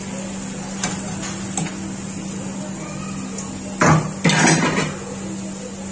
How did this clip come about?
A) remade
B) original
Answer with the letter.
B